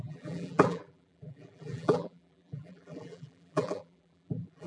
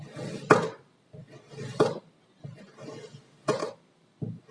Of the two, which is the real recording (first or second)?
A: second